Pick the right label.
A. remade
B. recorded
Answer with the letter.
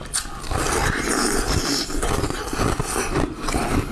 B